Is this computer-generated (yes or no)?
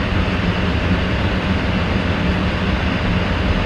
yes